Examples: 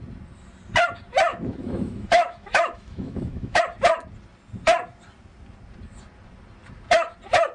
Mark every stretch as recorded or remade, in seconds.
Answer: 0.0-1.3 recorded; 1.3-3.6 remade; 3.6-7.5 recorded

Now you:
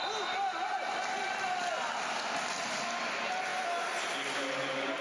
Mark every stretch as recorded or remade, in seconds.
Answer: 0.0-5.0 recorded

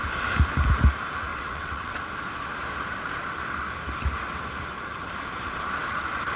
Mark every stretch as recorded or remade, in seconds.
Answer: 0.0-1.3 recorded; 1.3-1.9 remade; 1.9-6.4 recorded

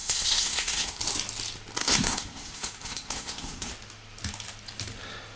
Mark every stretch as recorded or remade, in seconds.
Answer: 0.0-1.0 remade; 1.0-1.8 recorded; 1.8-3.7 remade; 3.7-5.4 recorded

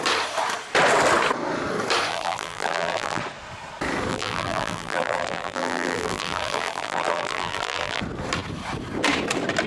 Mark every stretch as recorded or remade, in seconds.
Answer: 0.0-2.1 recorded; 2.1-3.2 remade; 3.2-4.1 recorded; 4.1-8.0 remade; 8.0-9.7 recorded

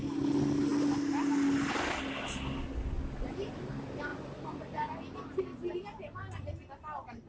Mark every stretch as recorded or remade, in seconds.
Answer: 0.0-7.3 recorded

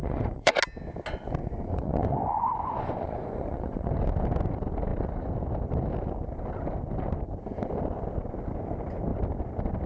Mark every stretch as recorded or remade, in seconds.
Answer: 0.0-0.5 remade; 0.5-1.4 recorded; 1.4-3.9 remade; 3.9-9.9 recorded

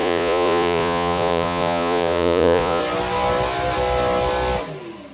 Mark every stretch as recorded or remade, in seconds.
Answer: 0.0-2.8 remade; 2.8-5.1 recorded